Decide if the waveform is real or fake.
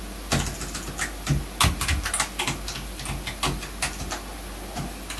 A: real